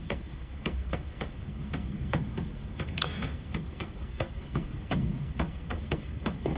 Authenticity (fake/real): fake